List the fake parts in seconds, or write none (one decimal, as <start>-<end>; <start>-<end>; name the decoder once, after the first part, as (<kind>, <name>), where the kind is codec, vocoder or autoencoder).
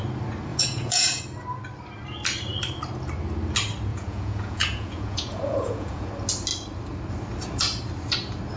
0.5-1.2 (vocoder, Vocos); 3.9-6.1